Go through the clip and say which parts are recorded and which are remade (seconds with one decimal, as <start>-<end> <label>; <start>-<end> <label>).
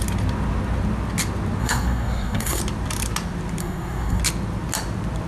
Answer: 0.0-1.6 recorded; 1.6-2.6 remade; 2.6-3.6 recorded; 3.6-4.2 remade; 4.2-5.3 recorded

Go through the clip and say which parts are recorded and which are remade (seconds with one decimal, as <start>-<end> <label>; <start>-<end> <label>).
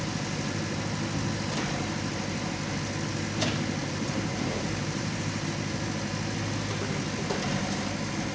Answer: 0.0-3.8 recorded; 3.8-5.5 remade; 5.5-8.3 recorded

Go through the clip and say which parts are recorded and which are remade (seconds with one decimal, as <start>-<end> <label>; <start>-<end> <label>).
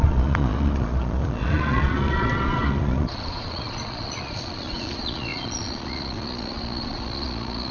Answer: 0.0-7.7 remade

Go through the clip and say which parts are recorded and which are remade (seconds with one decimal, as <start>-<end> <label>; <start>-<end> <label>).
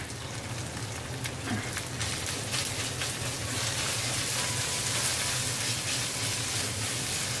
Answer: 0.0-7.4 recorded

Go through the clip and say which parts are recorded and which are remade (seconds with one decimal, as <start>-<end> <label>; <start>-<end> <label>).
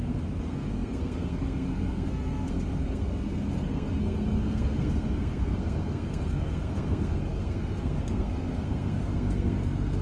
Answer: 0.0-10.0 remade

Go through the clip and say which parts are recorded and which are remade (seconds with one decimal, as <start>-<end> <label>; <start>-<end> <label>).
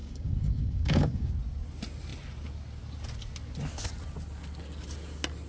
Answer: 0.0-1.3 remade; 1.3-5.5 recorded